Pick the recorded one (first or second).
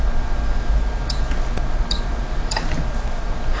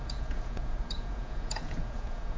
first